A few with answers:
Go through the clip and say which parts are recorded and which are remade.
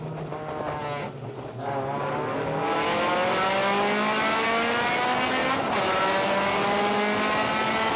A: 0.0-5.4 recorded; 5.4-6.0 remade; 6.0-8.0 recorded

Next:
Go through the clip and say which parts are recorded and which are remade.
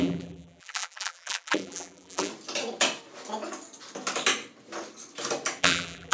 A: 0.0-2.3 remade; 2.3-5.6 recorded; 5.6-6.1 remade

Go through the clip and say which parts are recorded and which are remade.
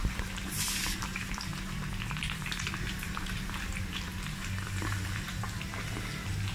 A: 0.0-1.5 remade; 1.5-2.1 recorded; 2.1-6.5 remade